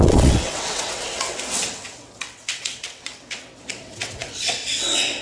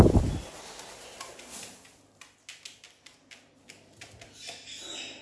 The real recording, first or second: second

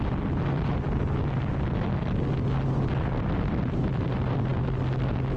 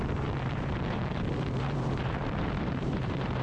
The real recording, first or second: first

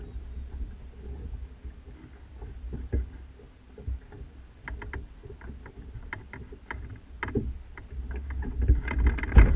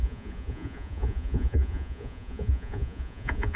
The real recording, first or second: first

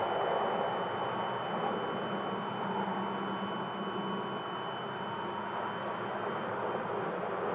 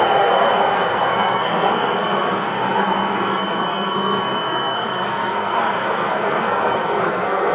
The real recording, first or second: first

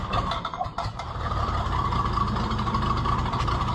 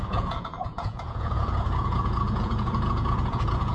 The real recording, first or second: first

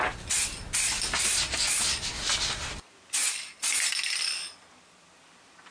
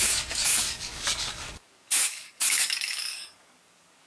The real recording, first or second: first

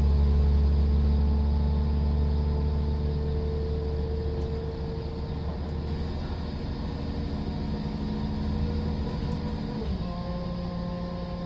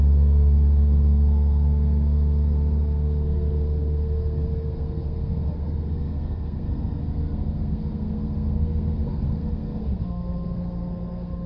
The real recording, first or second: first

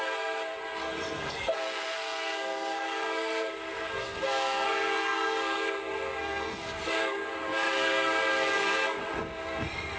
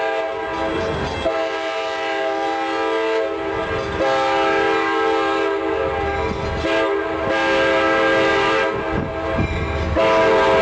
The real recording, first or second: second